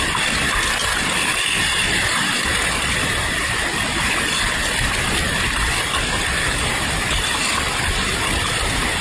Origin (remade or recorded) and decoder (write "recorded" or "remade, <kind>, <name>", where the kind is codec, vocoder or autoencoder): recorded